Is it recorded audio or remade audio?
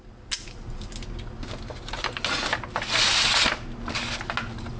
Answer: recorded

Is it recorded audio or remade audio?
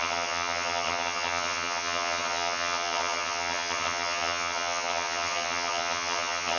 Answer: remade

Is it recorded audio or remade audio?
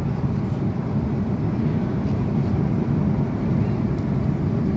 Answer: remade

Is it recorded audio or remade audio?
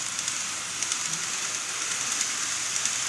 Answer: recorded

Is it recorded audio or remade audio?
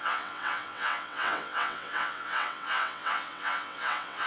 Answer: remade